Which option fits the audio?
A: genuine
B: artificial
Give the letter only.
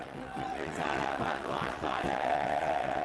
B